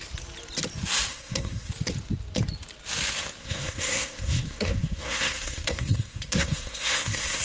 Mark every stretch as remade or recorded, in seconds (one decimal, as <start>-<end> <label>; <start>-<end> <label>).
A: 0.0-1.1 recorded; 1.1-1.7 remade; 1.7-3.4 recorded; 3.4-7.4 remade